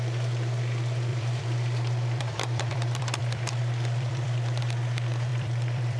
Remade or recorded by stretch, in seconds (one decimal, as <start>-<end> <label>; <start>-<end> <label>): 0.0-1.1 recorded; 1.1-4.6 remade; 4.6-5.3 recorded; 5.3-6.0 remade